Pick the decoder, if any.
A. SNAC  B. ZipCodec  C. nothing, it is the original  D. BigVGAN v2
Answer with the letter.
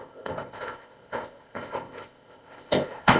B